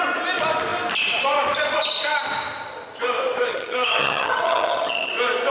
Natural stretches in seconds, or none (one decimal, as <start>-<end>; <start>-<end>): 0.0-3.5; 5.1-5.5